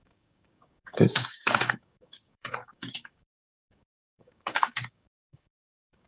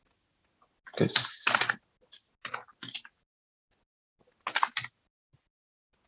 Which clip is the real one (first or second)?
second